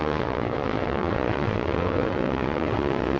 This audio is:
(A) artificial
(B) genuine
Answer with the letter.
A